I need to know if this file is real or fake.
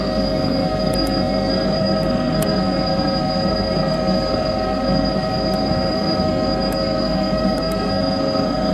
fake